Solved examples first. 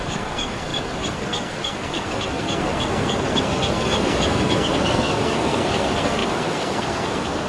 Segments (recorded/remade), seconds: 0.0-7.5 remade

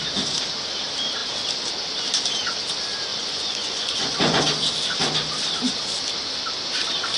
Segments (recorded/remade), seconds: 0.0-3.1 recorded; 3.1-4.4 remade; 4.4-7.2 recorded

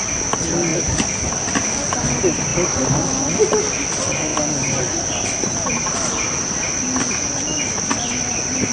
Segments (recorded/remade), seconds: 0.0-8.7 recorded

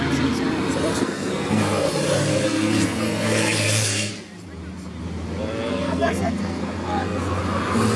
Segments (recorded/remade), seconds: 0.0-0.9 recorded; 0.9-1.9 remade; 1.9-2.3 recorded; 2.3-4.1 remade; 4.1-5.7 recorded; 5.7-7.4 remade; 7.4-8.0 recorded

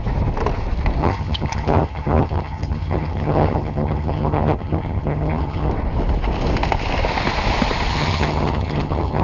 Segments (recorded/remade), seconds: 0.0-1.0 recorded; 1.0-5.7 remade; 5.7-7.9 recorded; 7.9-9.2 remade